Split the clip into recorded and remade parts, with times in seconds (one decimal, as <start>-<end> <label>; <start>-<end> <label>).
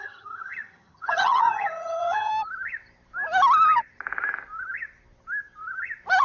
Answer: 0.0-2.3 remade; 2.3-6.2 recorded